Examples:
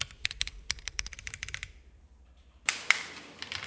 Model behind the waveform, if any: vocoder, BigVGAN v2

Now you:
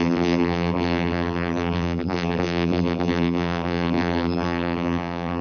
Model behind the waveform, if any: vocoder, BigVGAN v2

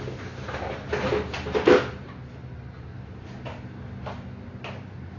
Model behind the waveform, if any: none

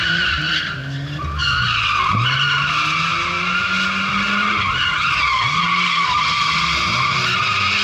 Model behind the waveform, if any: none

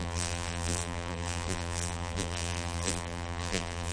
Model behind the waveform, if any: vocoder, BigVGAN v2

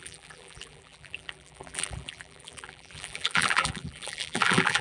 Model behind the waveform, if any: vocoder, BigVGAN v2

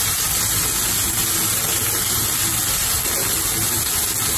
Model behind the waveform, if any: none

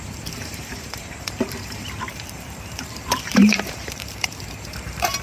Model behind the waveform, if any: vocoder, BigVGAN v2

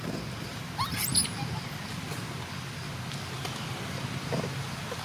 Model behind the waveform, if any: none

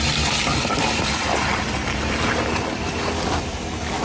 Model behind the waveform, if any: vocoder, BigVGAN v2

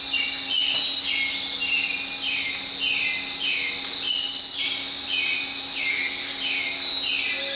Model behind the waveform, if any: none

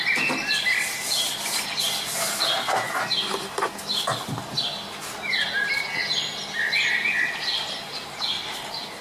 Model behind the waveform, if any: none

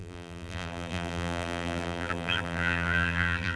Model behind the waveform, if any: vocoder, BigVGAN v2